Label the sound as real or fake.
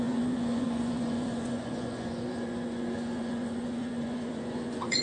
fake